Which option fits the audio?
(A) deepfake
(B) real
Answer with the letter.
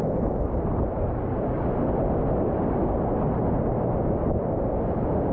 B